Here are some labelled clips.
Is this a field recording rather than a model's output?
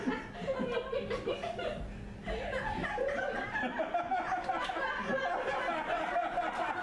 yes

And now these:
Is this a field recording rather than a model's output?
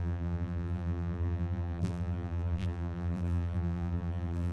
no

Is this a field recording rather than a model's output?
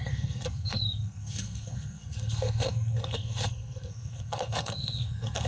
no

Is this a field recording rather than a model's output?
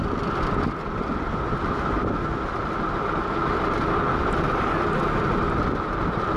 yes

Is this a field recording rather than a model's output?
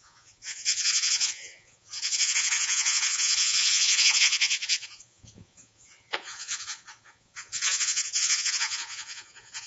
no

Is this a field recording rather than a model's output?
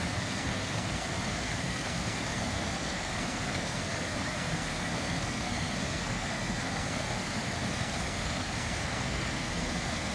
no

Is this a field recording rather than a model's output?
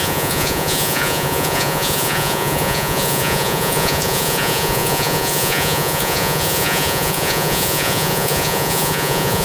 no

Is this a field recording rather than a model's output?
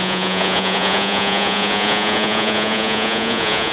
no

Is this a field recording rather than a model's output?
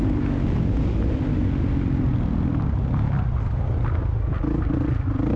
yes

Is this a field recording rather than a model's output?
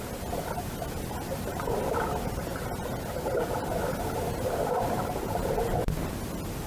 yes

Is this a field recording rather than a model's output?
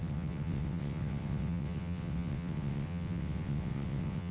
no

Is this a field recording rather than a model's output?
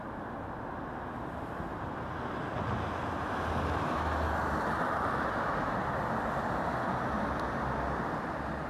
yes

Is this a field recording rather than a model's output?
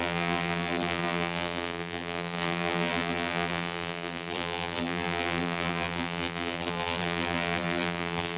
no